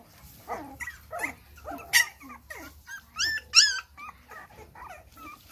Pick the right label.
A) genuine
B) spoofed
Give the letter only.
A